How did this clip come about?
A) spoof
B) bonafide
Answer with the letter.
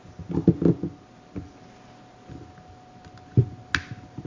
B